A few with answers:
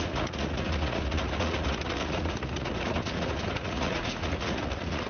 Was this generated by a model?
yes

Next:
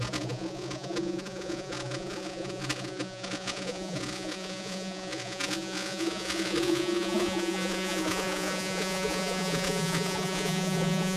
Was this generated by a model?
yes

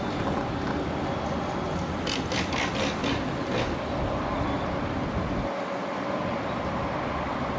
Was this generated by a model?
no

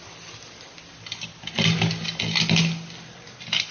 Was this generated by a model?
no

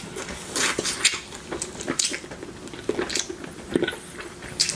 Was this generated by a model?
no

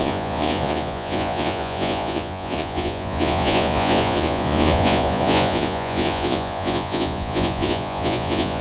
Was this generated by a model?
yes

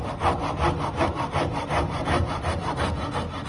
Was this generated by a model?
no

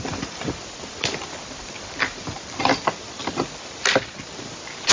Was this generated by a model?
no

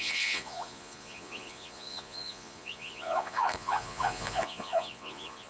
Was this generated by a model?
yes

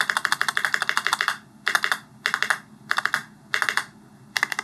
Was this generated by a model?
no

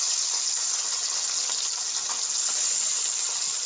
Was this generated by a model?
no